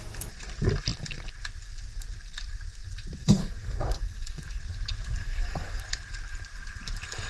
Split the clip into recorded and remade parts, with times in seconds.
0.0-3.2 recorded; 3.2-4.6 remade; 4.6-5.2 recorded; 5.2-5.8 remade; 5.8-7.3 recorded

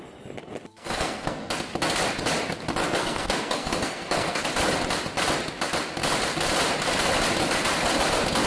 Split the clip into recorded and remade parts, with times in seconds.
0.0-0.7 recorded; 0.7-1.5 remade; 1.5-2.8 recorded; 2.8-4.4 remade; 4.4-8.5 recorded

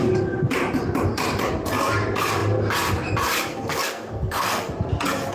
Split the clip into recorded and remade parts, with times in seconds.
0.0-3.5 recorded; 3.5-4.7 remade; 4.7-5.3 recorded

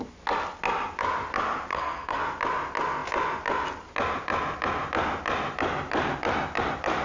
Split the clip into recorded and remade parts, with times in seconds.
0.0-1.7 recorded; 1.7-2.2 remade; 2.2-7.0 recorded

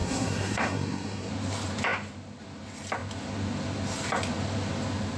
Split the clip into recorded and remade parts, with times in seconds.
0.0-1.3 remade; 1.3-5.2 recorded

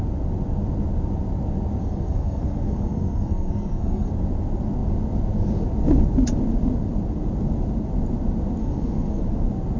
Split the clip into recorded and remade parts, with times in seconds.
0.0-1.8 recorded; 1.8-4.1 remade; 4.1-8.6 recorded; 8.6-9.2 remade; 9.2-9.8 recorded

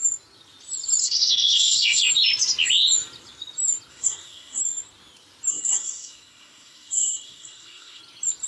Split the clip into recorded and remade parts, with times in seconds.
0.0-1.0 recorded; 1.0-2.0 remade; 2.0-3.9 recorded; 3.9-4.6 remade; 4.6-5.5 recorded; 5.5-8.0 remade; 8.0-8.5 recorded